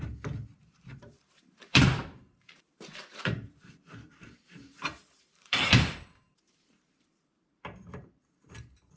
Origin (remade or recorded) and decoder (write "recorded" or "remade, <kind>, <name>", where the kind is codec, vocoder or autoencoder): remade, vocoder, BigVGAN v2